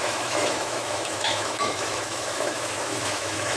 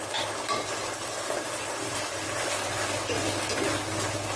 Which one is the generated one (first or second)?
first